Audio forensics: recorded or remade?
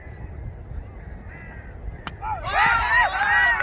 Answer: recorded